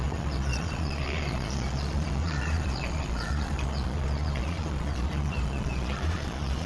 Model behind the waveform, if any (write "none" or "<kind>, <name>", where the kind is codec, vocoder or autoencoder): vocoder, Vocos